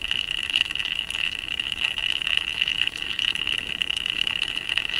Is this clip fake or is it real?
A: fake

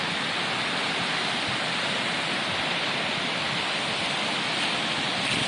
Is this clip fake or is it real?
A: real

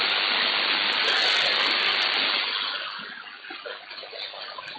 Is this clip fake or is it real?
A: real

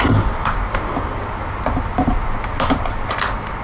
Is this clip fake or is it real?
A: real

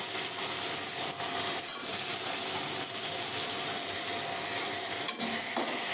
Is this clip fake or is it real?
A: real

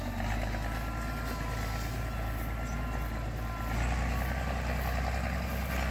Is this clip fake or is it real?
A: real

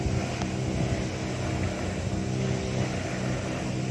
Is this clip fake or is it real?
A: real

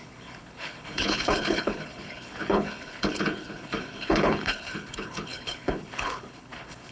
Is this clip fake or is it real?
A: fake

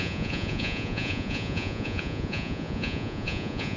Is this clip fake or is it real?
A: fake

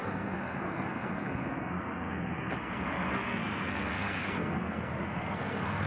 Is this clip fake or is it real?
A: fake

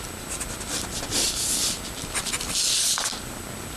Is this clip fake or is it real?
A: real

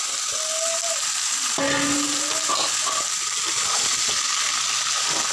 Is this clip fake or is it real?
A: real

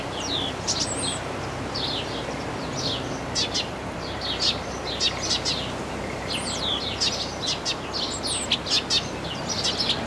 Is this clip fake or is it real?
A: real